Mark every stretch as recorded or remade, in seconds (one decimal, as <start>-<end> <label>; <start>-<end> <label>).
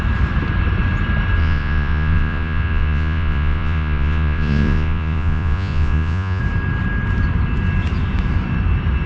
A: 0.0-1.4 recorded; 1.4-6.4 remade; 6.4-9.1 recorded